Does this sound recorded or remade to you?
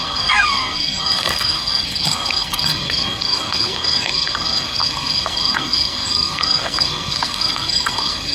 remade